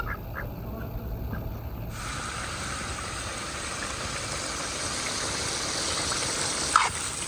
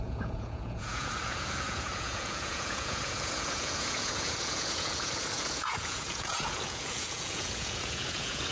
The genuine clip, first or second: first